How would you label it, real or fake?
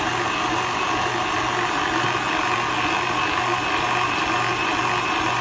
real